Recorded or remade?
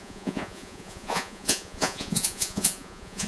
remade